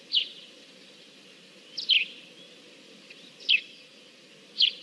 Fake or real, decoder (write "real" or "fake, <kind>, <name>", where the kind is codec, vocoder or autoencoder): real